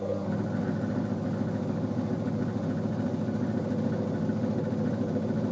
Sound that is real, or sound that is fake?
real